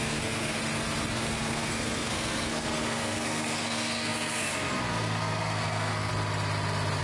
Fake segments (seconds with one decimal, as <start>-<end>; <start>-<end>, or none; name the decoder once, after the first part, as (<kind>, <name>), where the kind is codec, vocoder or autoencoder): 0.0-0.6 (codec, SNAC); 1.1-6.1